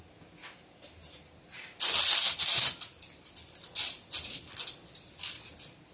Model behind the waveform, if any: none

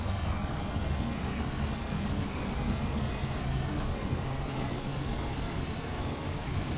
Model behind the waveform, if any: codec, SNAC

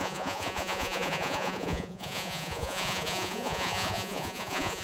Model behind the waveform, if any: vocoder, Vocos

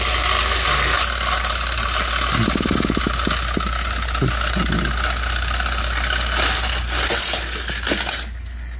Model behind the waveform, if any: none